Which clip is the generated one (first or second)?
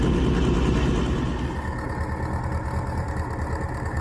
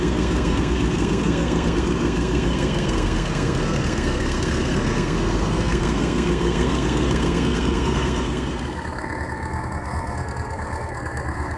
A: second